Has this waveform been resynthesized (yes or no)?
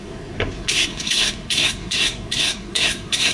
yes